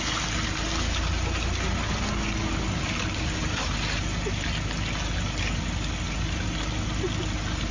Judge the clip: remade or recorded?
recorded